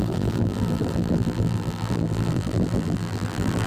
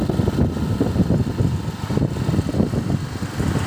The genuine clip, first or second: second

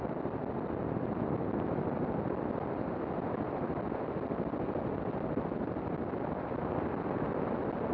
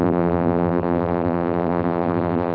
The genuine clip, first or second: first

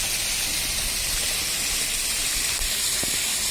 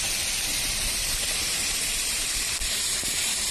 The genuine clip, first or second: first